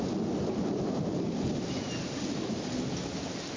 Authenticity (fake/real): real